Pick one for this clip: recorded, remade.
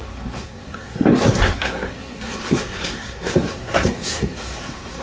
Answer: remade